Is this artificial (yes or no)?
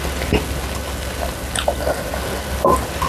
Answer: no